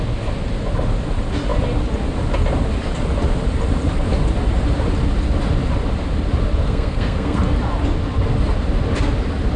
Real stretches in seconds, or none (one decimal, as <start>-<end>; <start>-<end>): 0.0-6.6; 7.4-9.6